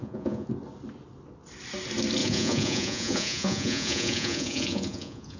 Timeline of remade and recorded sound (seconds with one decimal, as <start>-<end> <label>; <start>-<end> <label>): 0.0-0.5 remade; 0.5-2.2 recorded; 2.2-5.4 remade